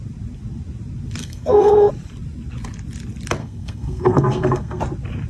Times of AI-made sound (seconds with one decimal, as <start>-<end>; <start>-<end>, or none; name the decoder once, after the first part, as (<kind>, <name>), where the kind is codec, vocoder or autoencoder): 1.2-1.9 (codec, SNAC); 3.4-4.8

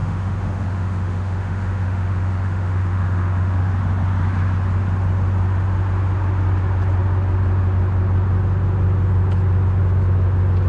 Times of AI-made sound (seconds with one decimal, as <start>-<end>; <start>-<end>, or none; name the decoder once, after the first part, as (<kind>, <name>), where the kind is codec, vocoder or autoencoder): 0.0-3.7 (autoencoder, DAC-VAE)

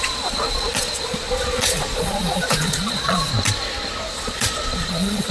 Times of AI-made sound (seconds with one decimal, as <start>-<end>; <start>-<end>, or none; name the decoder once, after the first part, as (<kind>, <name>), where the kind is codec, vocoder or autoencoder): 0.0-3.3 (vocoder, Vocos); 4.1-5.3

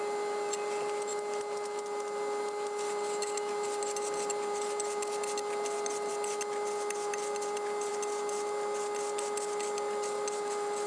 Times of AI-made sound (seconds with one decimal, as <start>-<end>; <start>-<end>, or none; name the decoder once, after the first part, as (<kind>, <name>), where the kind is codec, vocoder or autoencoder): none

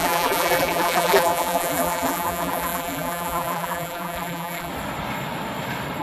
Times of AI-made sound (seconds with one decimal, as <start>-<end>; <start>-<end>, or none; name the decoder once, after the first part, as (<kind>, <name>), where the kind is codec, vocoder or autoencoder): 0.0-4.7 (vocoder, BigVGAN v2)

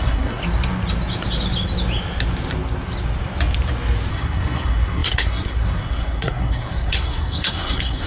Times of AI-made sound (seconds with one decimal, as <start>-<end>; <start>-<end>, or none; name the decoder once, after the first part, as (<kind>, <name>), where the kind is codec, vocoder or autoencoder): 0.0-0.4 (codec, SNAC); 4.1-8.1

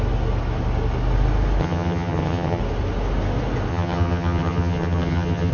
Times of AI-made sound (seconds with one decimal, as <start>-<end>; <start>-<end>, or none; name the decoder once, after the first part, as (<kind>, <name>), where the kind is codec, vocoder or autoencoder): 1.6-2.6 (vocoder, HiFi-GAN); 3.7-5.5